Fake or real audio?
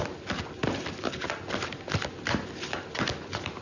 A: real